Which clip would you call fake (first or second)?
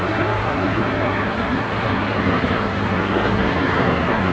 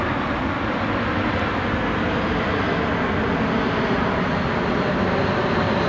first